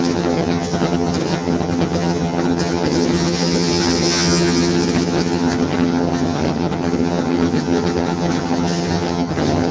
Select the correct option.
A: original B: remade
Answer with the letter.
B